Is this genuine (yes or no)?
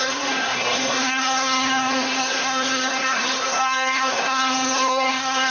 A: no